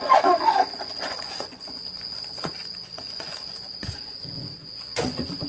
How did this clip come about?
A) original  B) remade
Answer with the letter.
B